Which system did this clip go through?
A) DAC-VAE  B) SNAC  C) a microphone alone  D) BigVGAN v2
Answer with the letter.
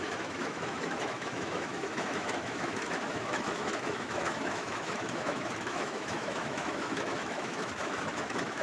A